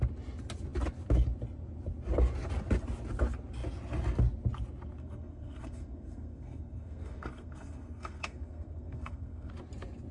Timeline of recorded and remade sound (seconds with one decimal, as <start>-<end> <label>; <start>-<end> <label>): 0.0-5.0 recorded; 5.0-9.5 remade; 9.5-10.1 recorded